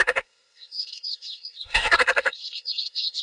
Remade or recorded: remade